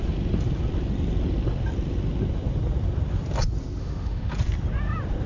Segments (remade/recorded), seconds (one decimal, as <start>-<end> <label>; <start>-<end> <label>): 0.0-3.8 recorded; 3.8-4.3 remade; 4.3-5.3 recorded